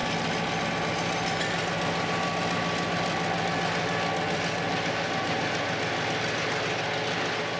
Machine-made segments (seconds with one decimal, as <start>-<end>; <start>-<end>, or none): none